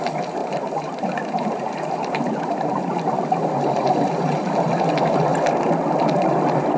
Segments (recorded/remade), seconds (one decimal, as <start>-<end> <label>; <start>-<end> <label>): 0.0-0.4 recorded; 0.4-4.0 remade; 4.0-6.8 recorded